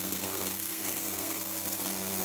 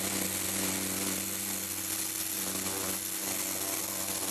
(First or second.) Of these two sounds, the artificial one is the first